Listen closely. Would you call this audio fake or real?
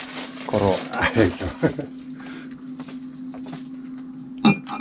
real